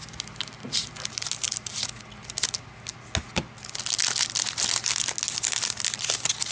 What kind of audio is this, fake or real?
real